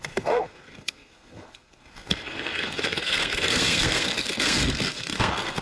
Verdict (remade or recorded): remade